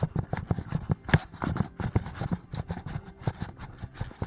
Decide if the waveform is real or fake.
real